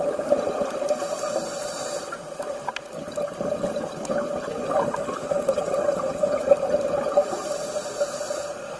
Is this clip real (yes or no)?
yes